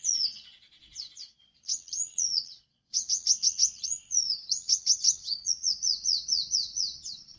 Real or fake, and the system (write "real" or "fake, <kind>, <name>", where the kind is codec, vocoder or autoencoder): fake, vocoder, Vocos